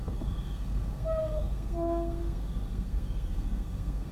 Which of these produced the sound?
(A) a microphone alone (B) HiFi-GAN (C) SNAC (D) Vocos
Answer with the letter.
C